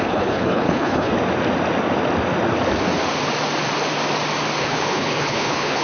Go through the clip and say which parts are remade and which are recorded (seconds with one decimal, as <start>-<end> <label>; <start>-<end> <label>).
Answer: 0.0-1.1 remade; 1.1-4.6 recorded; 4.6-5.8 remade